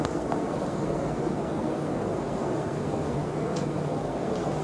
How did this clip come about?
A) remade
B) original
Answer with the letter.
A